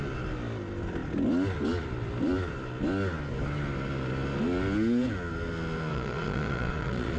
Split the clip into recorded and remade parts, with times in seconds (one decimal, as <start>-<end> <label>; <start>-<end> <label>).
0.0-5.9 recorded; 5.9-7.2 remade